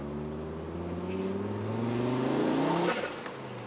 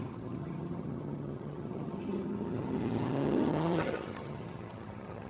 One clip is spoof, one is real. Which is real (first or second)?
first